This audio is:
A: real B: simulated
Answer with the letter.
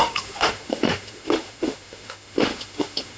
B